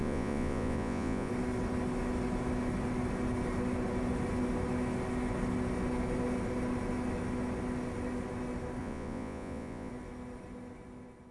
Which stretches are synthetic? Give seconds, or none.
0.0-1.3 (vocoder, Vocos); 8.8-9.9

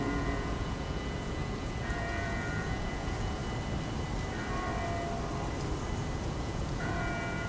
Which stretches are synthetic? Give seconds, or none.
0.0-3.4 (vocoder, Vocos); 6.2-7.5

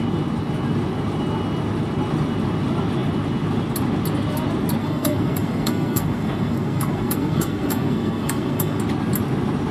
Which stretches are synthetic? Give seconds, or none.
4.8-8.8 (codec, SNAC)

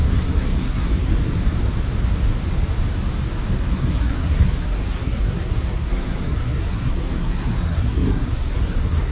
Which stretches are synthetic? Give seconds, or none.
0.0-1.1 (codec, SNAC); 3.7-9.1